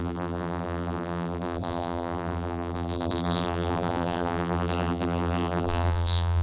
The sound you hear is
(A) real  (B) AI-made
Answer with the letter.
B